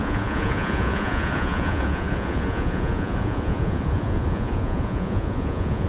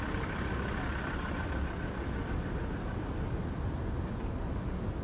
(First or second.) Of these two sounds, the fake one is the first